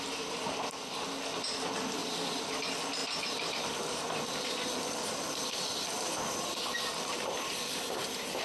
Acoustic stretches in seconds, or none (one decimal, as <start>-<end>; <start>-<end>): 0.0-2.0; 2.5-3.0; 7.8-8.4